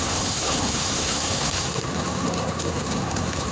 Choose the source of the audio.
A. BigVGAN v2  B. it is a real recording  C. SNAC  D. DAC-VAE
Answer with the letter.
C